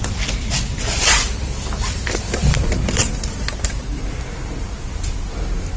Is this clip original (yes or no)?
yes